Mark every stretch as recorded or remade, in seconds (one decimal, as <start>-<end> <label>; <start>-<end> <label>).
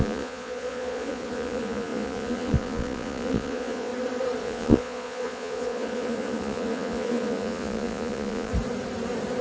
0.0-3.9 remade; 3.9-4.4 recorded; 4.4-8.5 remade; 8.5-9.4 recorded